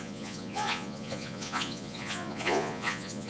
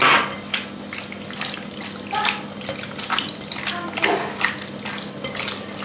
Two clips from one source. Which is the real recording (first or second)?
second